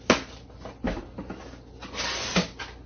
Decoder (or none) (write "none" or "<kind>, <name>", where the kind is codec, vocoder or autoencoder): none